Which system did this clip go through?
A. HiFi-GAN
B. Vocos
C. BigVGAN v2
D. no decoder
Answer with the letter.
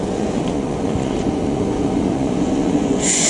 B